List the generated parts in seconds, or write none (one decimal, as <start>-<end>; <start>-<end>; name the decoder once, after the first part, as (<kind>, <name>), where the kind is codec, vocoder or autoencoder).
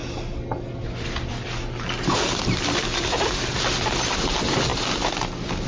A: none